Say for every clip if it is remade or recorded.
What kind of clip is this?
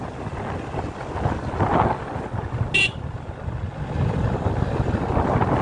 recorded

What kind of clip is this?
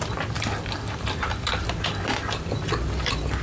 remade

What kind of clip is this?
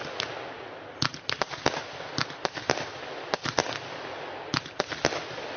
recorded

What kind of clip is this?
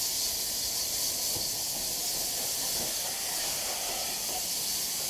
recorded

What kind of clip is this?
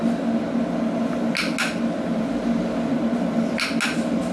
recorded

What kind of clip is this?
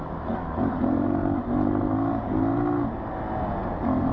remade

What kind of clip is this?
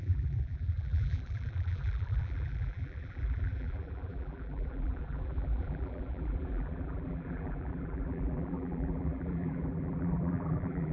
remade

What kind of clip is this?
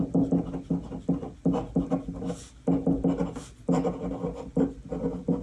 recorded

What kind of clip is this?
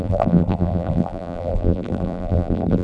remade